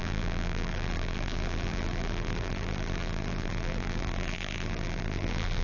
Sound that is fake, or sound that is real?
fake